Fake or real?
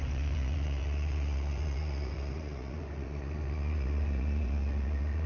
fake